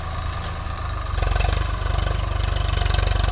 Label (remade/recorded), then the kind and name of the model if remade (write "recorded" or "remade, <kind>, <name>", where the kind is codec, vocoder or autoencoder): recorded